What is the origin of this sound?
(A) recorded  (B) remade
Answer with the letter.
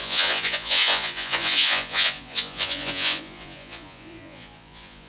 B